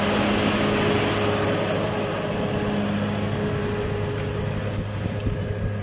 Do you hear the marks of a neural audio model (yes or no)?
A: no